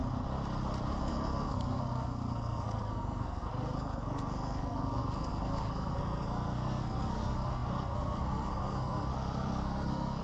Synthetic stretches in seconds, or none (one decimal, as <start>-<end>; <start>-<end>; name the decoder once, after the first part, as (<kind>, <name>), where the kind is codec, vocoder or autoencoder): 1.0-10.2 (codec, SNAC)